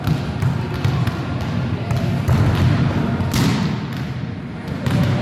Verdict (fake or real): real